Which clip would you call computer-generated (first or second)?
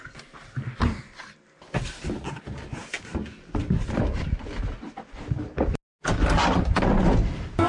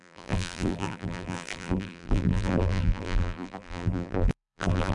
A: second